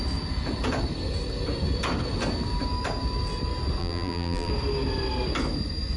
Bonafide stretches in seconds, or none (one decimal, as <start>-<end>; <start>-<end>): 0.0-3.8; 4.5-6.0